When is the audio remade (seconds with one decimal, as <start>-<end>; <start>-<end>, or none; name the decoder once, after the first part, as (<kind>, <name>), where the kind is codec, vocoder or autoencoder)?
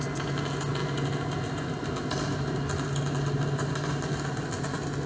none